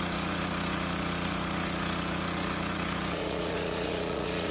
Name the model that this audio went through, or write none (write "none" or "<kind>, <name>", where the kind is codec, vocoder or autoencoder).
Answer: vocoder, Vocos